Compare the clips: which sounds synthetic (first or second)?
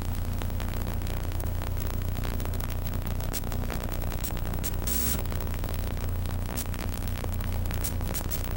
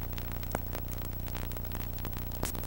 first